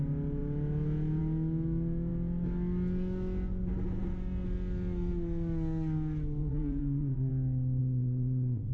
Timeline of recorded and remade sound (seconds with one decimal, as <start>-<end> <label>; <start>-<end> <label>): 0.0-6.4 recorded; 6.4-7.3 remade; 7.3-7.8 recorded; 7.8-8.7 remade